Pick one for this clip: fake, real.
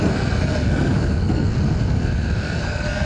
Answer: fake